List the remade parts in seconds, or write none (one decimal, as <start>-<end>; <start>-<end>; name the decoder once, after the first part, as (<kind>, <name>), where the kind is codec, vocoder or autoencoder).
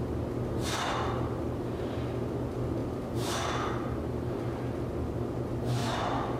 none